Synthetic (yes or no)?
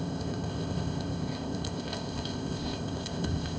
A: yes